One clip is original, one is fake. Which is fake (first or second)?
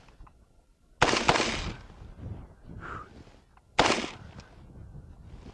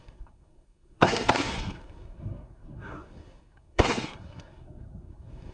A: second